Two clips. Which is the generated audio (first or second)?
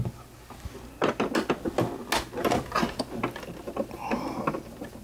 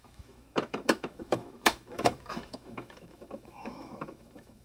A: second